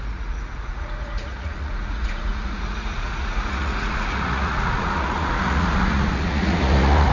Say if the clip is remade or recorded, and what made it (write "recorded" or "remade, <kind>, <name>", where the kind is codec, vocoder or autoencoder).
remade, vocoder, Vocos